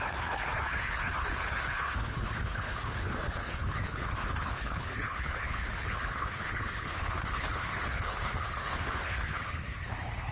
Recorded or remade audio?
remade